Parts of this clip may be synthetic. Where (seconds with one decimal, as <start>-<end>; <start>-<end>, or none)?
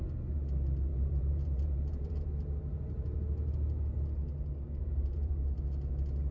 0.9-2.3; 4.8-5.6